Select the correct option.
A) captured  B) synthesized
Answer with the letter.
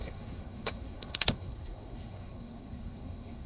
B